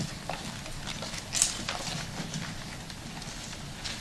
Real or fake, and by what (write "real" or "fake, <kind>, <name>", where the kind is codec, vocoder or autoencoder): real